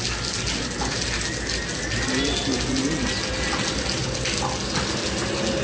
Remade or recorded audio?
recorded